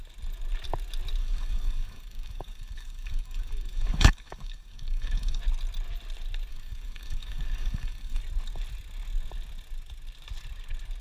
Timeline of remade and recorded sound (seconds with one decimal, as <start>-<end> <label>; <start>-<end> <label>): 0.0-1.2 recorded; 1.2-5.4 remade; 5.4-6.5 recorded; 6.5-8.2 remade; 8.2-11.0 recorded